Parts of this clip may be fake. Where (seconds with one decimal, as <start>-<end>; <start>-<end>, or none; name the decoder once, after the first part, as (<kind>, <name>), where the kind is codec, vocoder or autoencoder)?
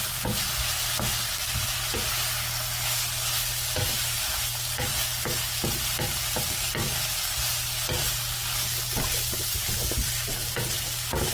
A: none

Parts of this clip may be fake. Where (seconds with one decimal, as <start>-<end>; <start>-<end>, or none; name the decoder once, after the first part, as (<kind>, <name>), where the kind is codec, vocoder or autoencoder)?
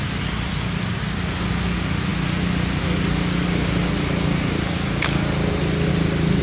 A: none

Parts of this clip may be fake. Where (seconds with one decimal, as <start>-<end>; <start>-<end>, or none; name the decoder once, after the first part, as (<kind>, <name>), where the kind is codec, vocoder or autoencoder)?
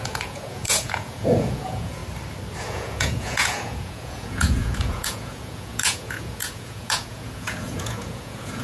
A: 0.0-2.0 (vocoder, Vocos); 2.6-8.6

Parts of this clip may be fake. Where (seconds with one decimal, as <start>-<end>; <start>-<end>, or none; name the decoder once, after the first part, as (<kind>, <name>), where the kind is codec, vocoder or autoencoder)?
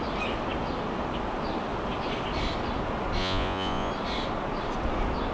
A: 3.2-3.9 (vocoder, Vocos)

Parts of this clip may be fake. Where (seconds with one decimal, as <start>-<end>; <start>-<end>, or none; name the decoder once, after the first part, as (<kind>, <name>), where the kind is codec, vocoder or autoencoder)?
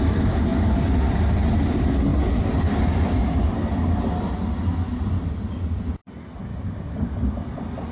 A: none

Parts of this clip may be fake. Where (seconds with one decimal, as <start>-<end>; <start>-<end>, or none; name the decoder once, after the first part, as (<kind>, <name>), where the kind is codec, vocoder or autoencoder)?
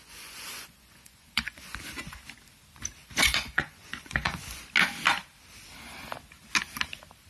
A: 0.0-1.8 (vocoder, Vocos); 3.0-4.6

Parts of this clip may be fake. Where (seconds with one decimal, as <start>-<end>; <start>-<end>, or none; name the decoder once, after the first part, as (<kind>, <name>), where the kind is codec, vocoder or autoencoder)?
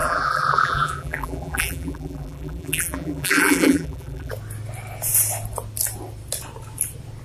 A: 0.0-4.3 (vocoder, BigVGAN v2)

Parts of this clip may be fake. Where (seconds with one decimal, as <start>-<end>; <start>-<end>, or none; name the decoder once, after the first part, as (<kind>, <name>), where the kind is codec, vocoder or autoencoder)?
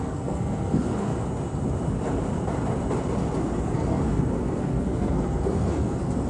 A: 0.0-1.1 (codec, SNAC); 3.6-6.3